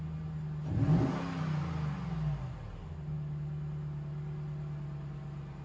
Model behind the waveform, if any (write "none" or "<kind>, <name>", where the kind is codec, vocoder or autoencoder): none